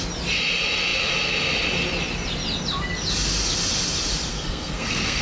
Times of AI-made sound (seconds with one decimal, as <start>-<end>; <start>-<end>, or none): 4.3-5.2